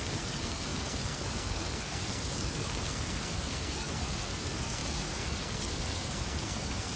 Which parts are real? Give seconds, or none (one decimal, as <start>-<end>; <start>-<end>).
none